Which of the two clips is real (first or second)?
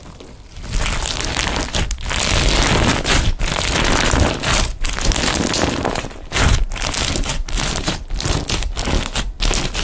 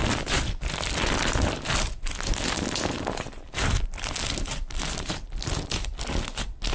first